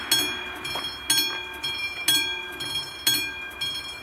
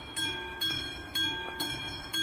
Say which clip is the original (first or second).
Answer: first